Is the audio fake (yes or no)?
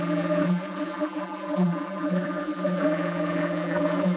yes